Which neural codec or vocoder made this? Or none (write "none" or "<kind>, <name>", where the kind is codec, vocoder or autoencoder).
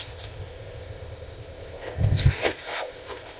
codec, ZipCodec